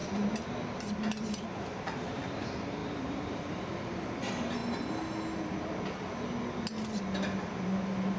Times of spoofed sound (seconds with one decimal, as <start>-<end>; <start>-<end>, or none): 1.2-4.6; 7.4-8.2